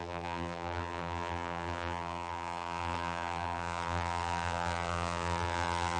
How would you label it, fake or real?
fake